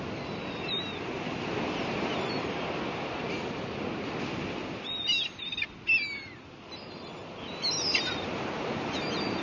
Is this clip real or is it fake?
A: real